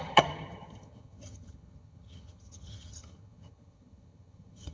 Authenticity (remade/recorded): remade